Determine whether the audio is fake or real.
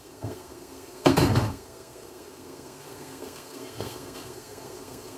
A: fake